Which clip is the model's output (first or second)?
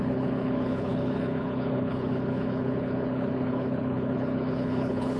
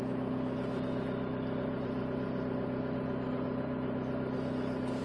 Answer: first